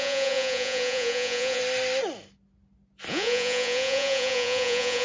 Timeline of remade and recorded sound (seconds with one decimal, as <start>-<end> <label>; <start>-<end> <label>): 0.0-1.6 remade; 1.6-3.1 recorded; 3.1-5.0 remade